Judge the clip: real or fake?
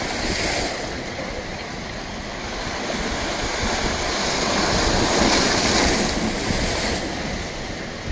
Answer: real